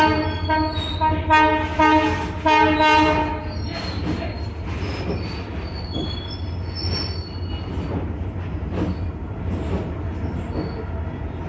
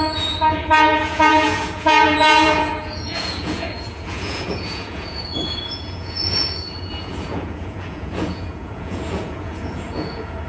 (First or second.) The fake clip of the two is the second